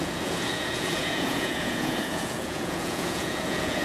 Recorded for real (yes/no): no